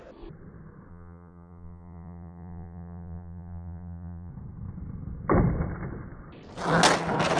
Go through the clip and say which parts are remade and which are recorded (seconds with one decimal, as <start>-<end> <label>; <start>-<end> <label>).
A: 0.0-0.9 recorded; 0.9-4.3 remade; 4.3-7.4 recorded